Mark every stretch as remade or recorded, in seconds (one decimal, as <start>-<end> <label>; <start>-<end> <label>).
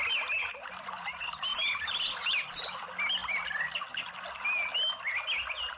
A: 0.0-1.5 recorded; 1.5-2.6 remade; 2.6-3.2 recorded; 3.2-4.1 remade; 4.1-5.8 recorded